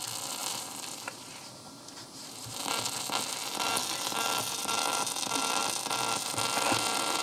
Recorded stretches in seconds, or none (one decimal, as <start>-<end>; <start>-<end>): 0.0-0.4; 2.7-7.2